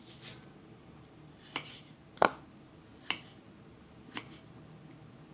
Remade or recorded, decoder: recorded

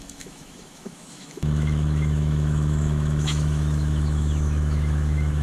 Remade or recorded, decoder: remade, autoencoder, DAC-VAE